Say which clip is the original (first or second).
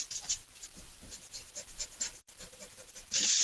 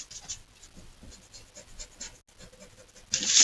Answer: second